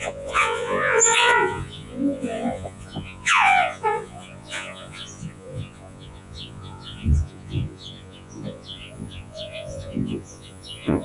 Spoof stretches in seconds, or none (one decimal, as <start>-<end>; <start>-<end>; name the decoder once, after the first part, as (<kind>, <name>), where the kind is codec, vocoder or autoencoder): 0.0-11.0 (vocoder, Vocos)